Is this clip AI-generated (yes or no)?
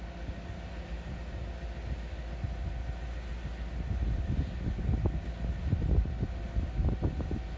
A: no